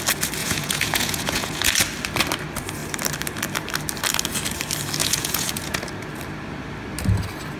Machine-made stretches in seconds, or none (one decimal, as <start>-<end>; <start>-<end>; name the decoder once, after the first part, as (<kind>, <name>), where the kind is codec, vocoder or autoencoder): 0.4-1.7 (vocoder, Vocos); 5.0-5.8